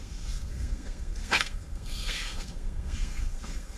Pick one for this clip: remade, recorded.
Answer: remade